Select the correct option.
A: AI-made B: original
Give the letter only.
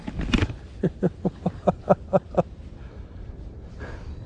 B